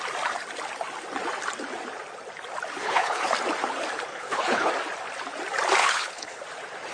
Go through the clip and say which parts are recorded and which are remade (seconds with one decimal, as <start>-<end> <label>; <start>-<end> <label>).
0.0-2.8 recorded; 2.8-3.3 remade; 3.3-4.1 recorded; 4.1-4.7 remade; 4.7-5.8 recorded; 5.8-6.4 remade; 6.4-6.9 recorded